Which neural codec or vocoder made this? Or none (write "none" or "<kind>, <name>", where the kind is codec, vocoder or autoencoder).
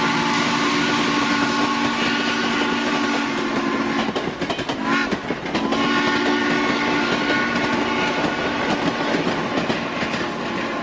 none